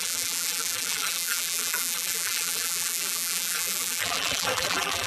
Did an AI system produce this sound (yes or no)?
yes